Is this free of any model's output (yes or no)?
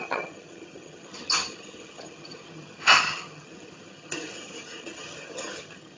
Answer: no